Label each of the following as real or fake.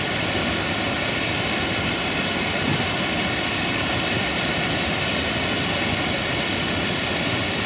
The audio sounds real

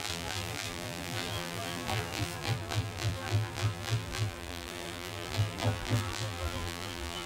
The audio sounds fake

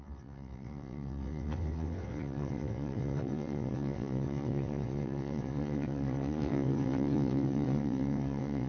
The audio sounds fake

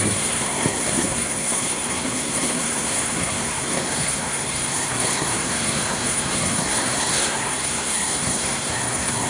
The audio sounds fake